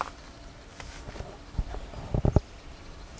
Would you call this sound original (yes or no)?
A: yes